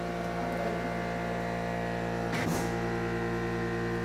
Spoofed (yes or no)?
no